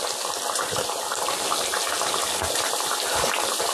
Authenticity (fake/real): real